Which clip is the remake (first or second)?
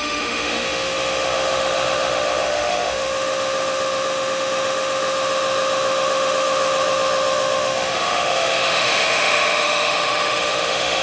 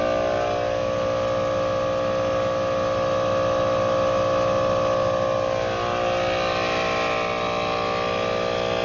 first